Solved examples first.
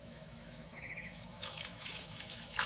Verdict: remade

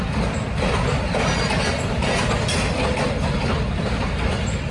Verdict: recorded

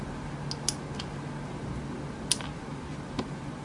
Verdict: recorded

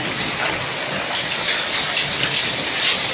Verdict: recorded